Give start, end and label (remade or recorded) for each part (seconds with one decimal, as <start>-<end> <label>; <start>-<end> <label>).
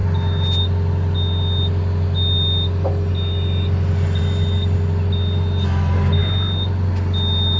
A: 0.0-7.6 recorded